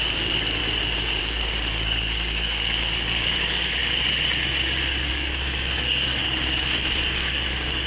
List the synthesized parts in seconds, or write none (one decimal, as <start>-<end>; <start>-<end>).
0.0-0.6; 1.2-3.8; 5.1-7.9